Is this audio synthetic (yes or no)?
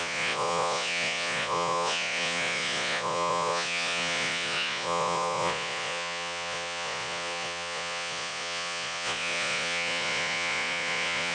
yes